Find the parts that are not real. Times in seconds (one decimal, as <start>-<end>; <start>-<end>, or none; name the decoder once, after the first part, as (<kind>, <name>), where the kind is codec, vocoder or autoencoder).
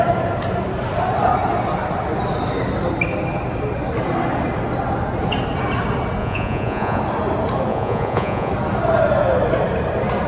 6.2-7.0 (vocoder, Vocos); 7.7-8.5